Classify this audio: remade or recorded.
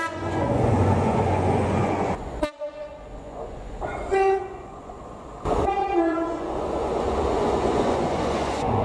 remade